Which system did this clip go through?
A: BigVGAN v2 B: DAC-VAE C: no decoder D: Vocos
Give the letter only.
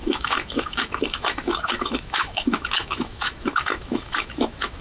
B